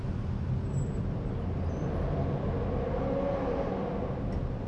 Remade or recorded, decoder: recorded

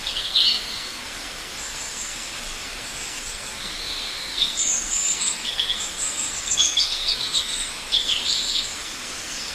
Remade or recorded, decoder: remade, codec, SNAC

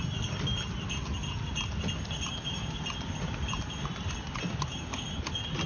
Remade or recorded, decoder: recorded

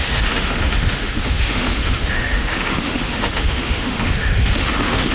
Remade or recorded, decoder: remade, autoencoder, DAC-VAE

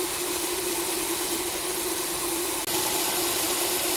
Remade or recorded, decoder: recorded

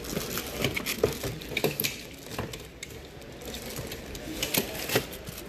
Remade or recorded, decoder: recorded